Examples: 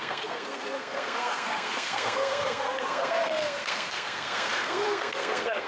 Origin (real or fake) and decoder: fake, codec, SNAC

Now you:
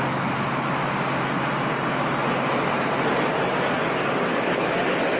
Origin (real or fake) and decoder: real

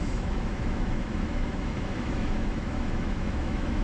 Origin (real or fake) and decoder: fake, autoencoder, DAC-VAE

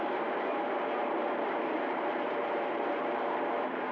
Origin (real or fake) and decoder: fake, vocoder, BigVGAN v2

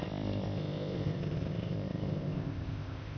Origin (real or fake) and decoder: fake, codec, ZipCodec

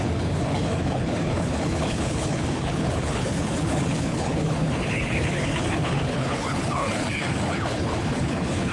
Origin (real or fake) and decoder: fake, codec, HILCodec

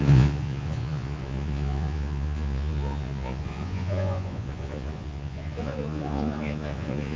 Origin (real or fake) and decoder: fake, vocoder, Vocos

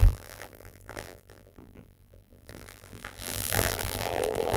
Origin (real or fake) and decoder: fake, vocoder, BigVGAN v2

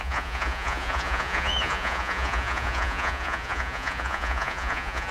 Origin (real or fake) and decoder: fake, vocoder, Vocos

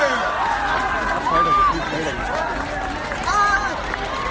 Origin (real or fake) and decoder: real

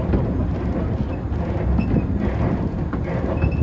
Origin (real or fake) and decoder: real